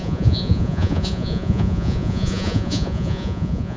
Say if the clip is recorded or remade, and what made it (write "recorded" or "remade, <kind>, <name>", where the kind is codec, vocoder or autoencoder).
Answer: remade, vocoder, Vocos